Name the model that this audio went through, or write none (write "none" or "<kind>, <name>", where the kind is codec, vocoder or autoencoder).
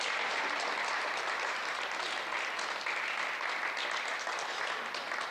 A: none